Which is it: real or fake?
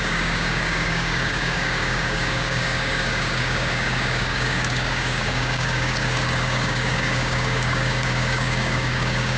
fake